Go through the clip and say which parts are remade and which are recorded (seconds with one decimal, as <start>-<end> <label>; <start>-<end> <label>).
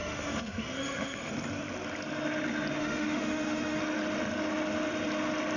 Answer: 0.0-1.3 remade; 1.3-2.8 recorded; 2.8-3.8 remade; 3.8-5.6 recorded